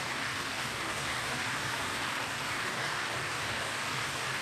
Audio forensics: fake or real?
fake